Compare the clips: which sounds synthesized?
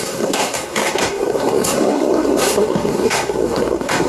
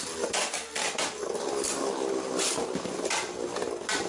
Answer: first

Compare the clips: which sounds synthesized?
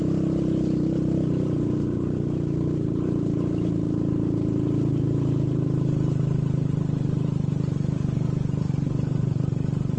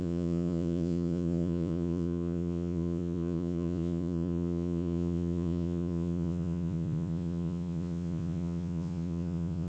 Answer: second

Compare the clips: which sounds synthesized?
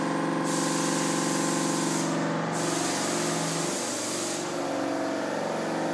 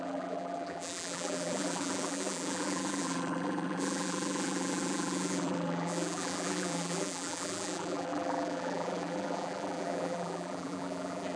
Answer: second